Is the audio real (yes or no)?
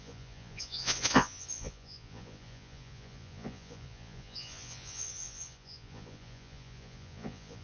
no